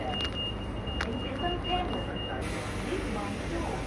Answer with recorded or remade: recorded